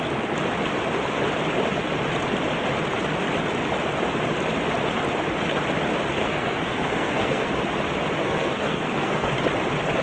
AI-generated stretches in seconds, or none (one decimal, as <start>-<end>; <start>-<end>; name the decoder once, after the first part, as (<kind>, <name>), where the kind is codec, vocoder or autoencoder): 6.2-7.5 (codec, SNAC); 8.2-9.3